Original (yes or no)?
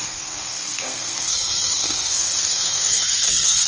no